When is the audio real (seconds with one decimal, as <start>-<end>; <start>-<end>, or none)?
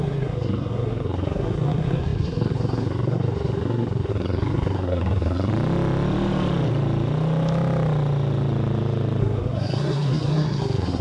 5.5-9.2